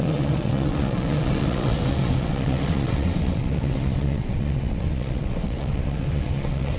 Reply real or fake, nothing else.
fake